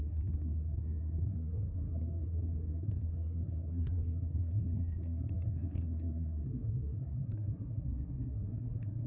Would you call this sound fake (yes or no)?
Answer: yes